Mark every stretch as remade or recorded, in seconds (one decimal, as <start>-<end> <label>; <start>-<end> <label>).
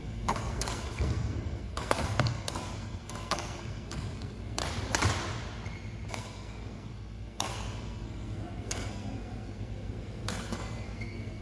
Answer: 0.0-4.6 remade; 4.6-6.1 recorded; 6.1-11.4 remade